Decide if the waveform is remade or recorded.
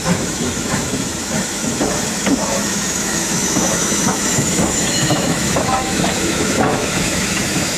remade